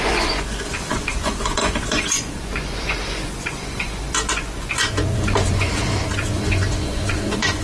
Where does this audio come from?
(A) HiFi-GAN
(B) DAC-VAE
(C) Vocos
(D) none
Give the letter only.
C